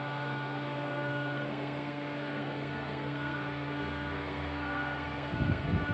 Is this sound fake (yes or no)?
yes